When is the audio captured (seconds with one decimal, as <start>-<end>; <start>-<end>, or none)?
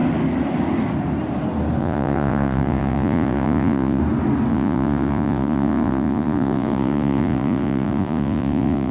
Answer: 0.0-1.8; 4.0-4.5